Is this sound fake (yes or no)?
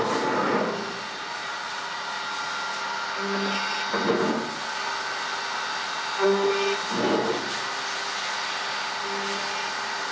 no